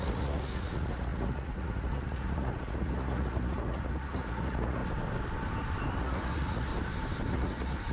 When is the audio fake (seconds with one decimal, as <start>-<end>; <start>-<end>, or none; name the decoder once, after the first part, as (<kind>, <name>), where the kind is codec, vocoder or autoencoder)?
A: 0.0-4.8 (vocoder, Vocos); 6.0-6.7; 7.3-7.9